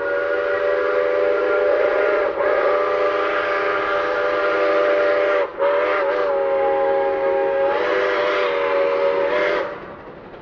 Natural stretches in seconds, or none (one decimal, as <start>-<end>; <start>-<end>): 0.0-1.7; 2.7-10.4